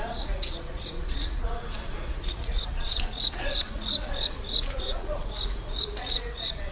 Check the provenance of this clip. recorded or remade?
remade